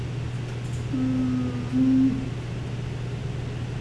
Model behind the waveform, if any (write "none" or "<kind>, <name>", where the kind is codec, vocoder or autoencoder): none